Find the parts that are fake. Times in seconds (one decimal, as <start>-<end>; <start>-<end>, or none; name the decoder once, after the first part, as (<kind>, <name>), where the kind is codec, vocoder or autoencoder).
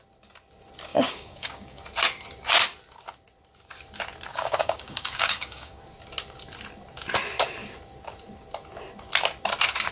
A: 0.9-1.8 (codec, DAC); 4.3-5.8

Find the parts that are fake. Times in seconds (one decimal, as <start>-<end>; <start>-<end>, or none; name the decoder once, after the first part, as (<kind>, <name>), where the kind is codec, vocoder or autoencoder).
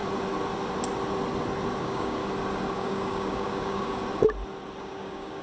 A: 1.8-2.2 (codec, DAC); 2.7-4.0; 4.8-5.4